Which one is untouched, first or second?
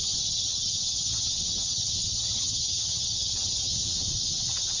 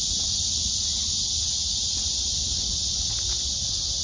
second